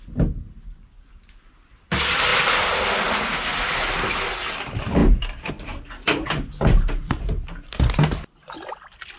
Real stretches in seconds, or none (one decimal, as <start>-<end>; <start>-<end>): 0.0-9.2